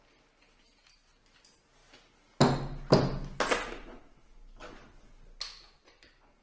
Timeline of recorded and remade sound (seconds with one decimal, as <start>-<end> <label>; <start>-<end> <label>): 0.0-6.4 recorded